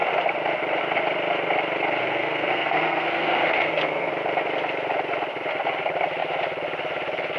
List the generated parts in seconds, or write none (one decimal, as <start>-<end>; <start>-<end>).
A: 2.0-4.1

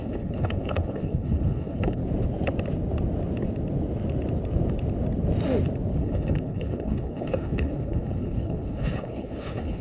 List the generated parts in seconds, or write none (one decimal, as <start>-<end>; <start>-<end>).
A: 0.0-2.0; 6.0-9.8

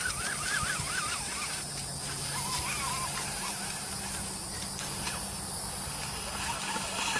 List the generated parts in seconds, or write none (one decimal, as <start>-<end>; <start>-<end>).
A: none

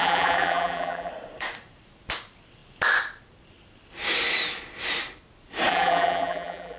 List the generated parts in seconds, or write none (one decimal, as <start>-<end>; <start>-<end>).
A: 0.0-1.1; 5.7-6.8

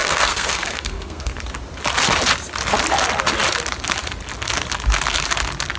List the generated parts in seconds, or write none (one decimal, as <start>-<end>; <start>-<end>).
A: 0.0-1.4